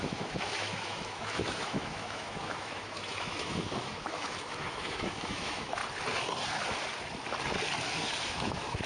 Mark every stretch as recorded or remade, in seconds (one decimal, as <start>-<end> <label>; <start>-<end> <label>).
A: 0.0-5.8 remade; 5.8-8.3 recorded; 8.3-8.9 remade

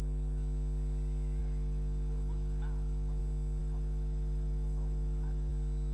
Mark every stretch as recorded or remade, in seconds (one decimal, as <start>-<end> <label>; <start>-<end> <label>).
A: 0.0-1.4 recorded; 1.4-3.2 remade; 3.2-3.6 recorded; 3.6-5.5 remade; 5.5-5.9 recorded

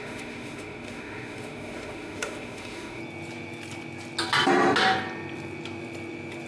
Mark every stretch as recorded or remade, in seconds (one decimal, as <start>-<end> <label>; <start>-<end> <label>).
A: 0.0-3.0 remade; 3.0-6.5 recorded

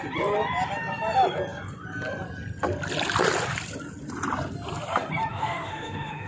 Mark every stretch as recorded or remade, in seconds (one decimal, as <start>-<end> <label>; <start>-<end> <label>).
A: 0.0-5.3 recorded; 5.3-6.3 remade